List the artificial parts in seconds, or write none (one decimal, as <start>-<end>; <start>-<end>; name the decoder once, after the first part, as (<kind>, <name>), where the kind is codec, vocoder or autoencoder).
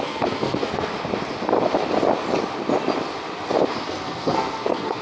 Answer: 0.0-0.9 (codec, SNAC); 3.9-5.0